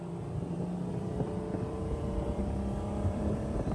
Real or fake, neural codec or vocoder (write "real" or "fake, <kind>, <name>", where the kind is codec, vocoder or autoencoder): fake, vocoder, BigVGAN v2